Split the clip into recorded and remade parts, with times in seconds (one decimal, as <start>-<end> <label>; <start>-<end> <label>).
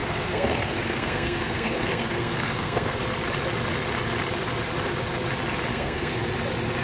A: 0.0-3.0 remade; 3.0-5.7 recorded; 5.7-6.2 remade; 6.2-6.8 recorded